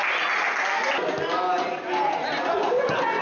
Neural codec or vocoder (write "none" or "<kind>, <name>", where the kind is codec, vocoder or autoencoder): none